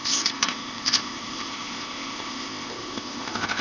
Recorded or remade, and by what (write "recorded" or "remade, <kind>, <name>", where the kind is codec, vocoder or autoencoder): remade, codec, ZipCodec